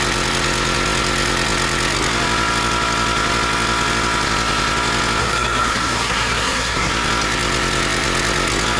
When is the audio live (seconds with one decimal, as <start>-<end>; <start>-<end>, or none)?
0.0-5.2; 6.9-8.8